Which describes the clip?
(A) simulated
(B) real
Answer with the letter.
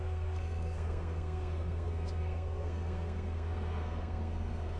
A